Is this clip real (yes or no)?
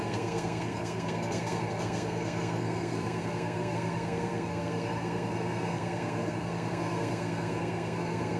no